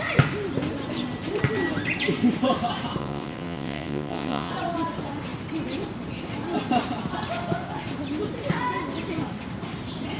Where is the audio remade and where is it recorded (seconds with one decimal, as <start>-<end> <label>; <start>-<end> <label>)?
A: 0.0-3.0 recorded; 3.0-4.5 remade; 4.5-10.2 recorded